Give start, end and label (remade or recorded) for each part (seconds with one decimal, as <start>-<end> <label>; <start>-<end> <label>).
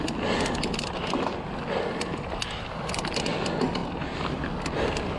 0.0-5.2 recorded